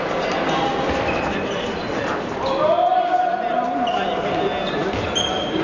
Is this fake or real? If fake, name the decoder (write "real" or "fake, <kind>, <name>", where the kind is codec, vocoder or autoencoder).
real